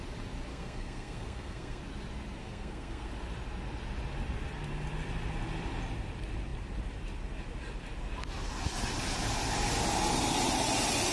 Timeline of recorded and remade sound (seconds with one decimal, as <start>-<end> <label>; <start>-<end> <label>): 0.0-0.5 recorded; 0.5-1.8 remade; 1.8-2.4 recorded; 2.4-3.1 remade; 3.1-11.1 recorded